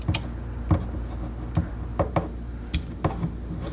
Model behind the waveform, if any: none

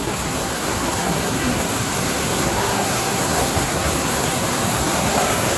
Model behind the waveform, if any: codec, SNAC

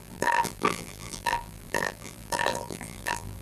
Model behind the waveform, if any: vocoder, BigVGAN v2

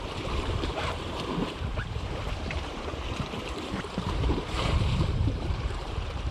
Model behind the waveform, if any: vocoder, BigVGAN v2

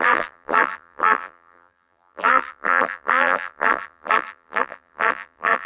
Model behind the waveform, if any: vocoder, BigVGAN v2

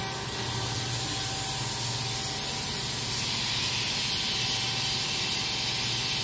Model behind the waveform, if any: none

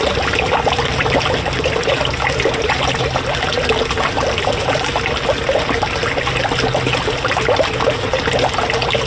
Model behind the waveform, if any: none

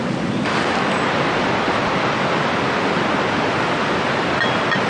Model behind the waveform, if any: none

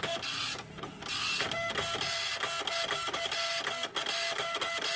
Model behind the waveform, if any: none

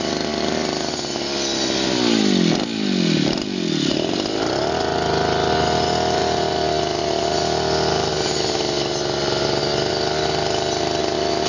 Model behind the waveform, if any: none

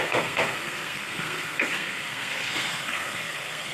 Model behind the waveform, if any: codec, SNAC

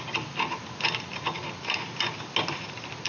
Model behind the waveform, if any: none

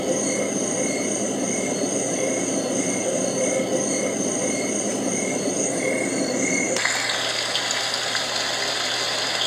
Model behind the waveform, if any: none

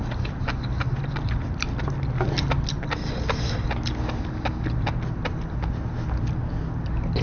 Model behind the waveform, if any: none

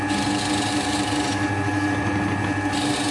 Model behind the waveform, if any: none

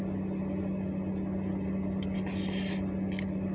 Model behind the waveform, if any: none